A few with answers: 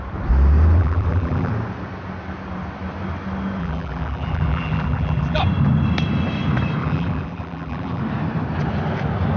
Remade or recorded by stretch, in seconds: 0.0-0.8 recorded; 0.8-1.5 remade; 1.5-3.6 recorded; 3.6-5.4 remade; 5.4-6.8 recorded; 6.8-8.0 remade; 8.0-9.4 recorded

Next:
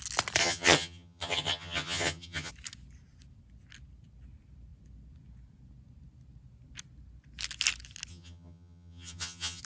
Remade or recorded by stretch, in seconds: 0.0-0.4 recorded; 0.4-2.5 remade; 2.5-8.1 recorded; 8.1-9.6 remade